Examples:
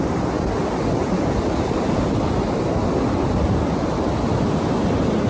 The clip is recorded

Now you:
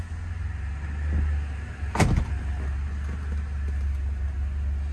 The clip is recorded